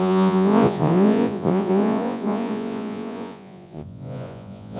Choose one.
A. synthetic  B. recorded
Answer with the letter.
A